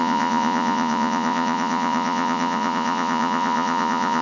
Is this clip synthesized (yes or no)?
yes